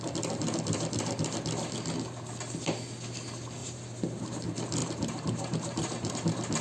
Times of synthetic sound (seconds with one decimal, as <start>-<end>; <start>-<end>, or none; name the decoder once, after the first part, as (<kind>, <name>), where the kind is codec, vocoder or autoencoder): 3.6-4.2 (vocoder, BigVGAN v2); 4.8-6.1